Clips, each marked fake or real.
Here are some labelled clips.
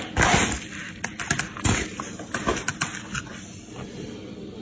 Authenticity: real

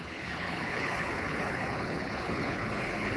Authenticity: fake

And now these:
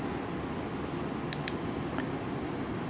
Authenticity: real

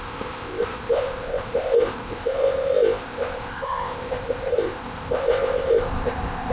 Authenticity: fake